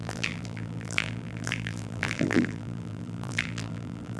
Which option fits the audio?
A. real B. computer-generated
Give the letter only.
B